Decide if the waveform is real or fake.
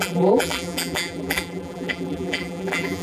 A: fake